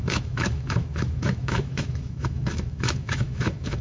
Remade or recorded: remade